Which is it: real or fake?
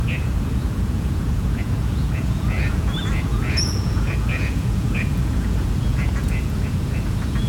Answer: fake